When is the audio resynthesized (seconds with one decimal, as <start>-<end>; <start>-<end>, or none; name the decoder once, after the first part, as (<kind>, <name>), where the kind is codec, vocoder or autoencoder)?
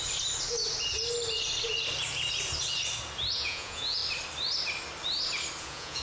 3.3-4.0 (vocoder, Vocos); 5.6-6.0